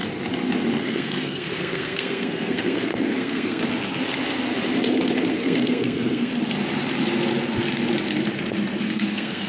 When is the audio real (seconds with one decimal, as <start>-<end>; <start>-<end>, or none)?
0.0-0.8; 3.6-5.3; 6.3-8.8